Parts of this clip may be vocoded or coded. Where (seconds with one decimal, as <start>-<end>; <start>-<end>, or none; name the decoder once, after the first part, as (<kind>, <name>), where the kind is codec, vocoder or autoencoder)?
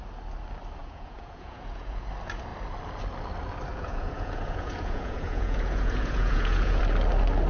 0.8-2.1 (vocoder, Vocos); 3.7-6.8